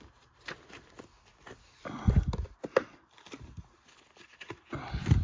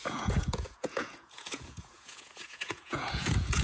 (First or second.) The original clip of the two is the first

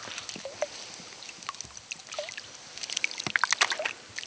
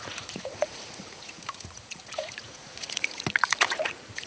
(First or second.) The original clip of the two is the first